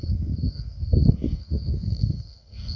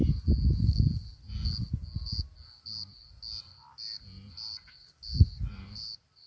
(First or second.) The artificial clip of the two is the first